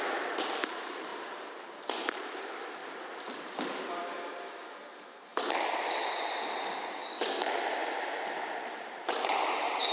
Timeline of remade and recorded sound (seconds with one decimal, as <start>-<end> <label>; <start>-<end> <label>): 0.0-2.8 remade; 2.8-4.0 recorded; 4.0-5.3 remade; 5.3-9.0 recorded; 9.0-9.9 remade